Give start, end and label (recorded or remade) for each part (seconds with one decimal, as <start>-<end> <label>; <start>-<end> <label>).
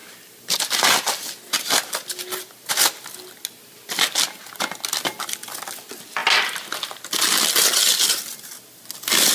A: 0.0-0.6 remade; 0.6-9.3 recorded